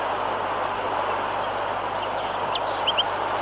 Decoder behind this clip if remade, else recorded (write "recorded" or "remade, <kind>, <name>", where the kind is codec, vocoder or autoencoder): recorded